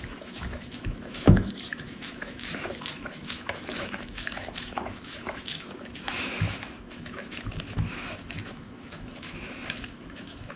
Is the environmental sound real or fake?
fake